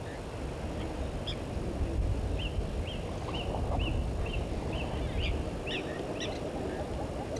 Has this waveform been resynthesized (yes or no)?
no